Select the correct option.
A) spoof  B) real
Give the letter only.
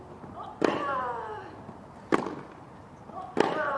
B